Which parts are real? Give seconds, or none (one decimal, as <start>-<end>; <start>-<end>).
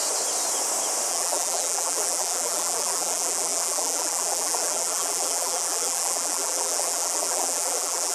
0.0-1.1